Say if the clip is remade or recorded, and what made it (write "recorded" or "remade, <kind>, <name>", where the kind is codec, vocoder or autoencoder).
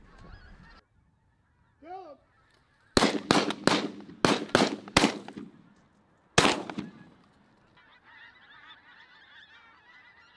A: recorded